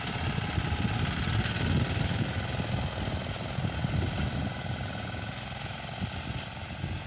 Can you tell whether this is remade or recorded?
recorded